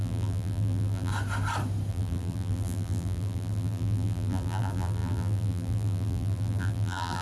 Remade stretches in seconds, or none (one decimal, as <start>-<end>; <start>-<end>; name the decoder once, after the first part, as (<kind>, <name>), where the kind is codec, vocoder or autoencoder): 0.0-1.1 (vocoder, BigVGAN v2); 1.9-7.2